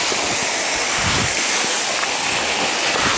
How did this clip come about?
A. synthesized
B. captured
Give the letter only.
B